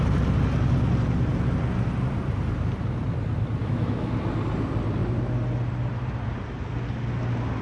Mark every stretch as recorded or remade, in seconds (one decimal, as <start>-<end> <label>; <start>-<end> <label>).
0.0-3.6 recorded; 3.6-4.1 remade; 4.1-7.6 recorded